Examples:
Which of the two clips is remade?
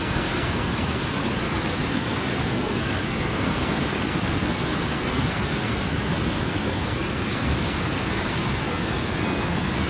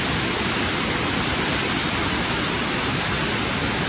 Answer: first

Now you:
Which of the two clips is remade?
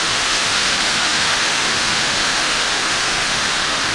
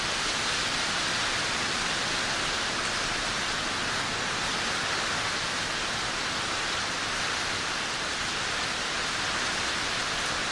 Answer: first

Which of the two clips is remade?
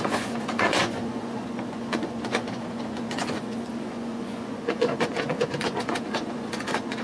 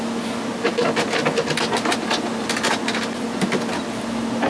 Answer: first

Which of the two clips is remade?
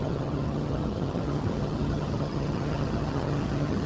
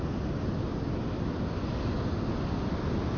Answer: first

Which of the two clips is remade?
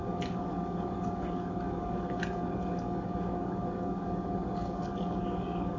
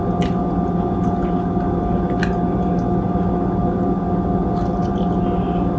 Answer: first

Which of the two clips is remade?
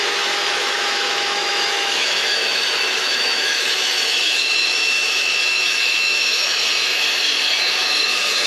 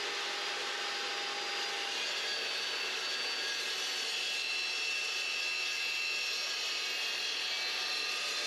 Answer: first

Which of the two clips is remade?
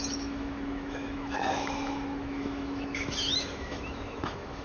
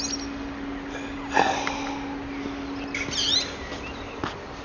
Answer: first